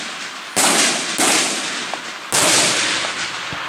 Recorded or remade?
recorded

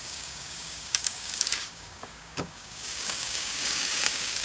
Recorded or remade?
remade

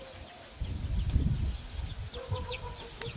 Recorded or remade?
recorded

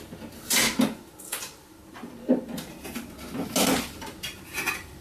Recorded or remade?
recorded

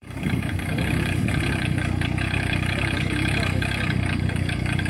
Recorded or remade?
remade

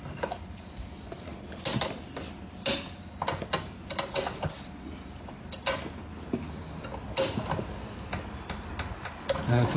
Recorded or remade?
recorded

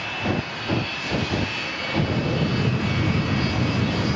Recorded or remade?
recorded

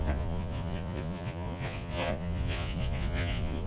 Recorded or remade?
remade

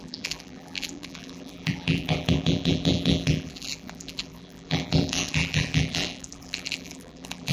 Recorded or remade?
remade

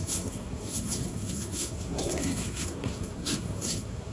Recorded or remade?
remade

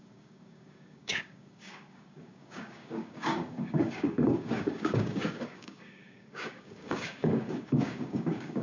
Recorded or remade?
remade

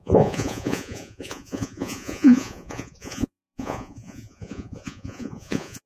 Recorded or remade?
remade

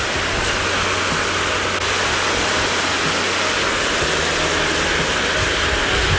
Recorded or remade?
recorded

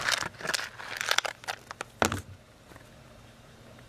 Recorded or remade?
recorded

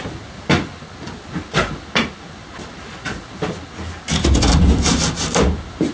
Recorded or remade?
recorded